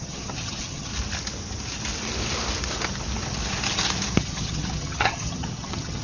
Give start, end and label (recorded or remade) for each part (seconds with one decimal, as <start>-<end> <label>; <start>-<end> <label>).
0.0-0.9 remade; 0.9-4.2 recorded; 4.2-6.0 remade